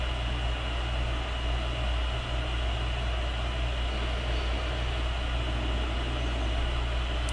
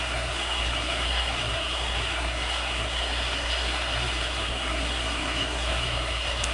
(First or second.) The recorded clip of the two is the first